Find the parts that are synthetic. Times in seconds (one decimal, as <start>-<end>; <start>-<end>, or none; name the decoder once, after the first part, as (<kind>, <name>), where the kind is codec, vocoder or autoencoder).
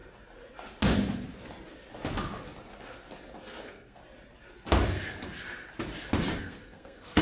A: 3.6-4.0 (codec, SNAC); 6.4-7.2